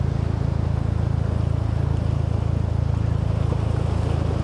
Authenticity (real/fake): real